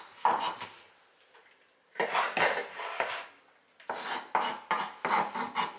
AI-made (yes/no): no